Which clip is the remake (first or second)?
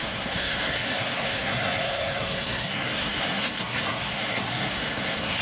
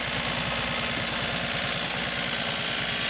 first